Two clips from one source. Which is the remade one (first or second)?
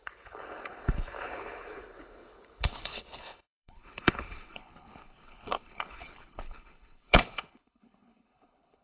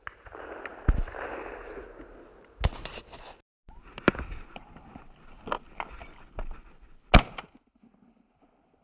first